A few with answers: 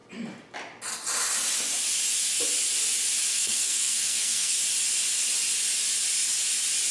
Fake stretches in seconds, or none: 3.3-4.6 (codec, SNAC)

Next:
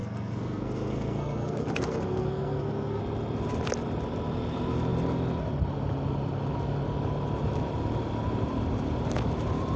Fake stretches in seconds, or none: 0.0-3.0 (codec, SNAC)

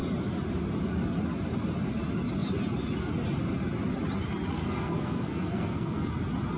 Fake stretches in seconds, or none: 4.6-6.1 (codec, SNAC)

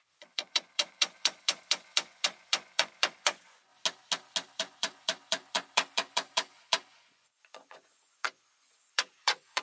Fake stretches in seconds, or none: 0.0-3.7 (vocoder, Vocos); 4.6-9.6

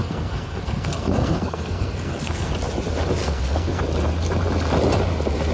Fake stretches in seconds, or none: 0.0-2.5 (codec, SNAC); 3.2-3.8